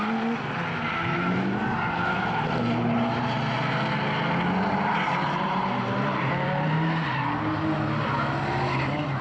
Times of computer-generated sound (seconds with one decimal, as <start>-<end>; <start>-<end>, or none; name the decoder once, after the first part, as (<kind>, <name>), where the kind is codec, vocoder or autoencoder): 4.7-7.2 (vocoder, BigVGAN v2)